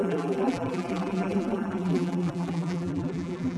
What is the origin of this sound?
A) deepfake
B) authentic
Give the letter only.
A